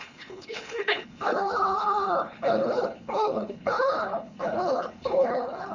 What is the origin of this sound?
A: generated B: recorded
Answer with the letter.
A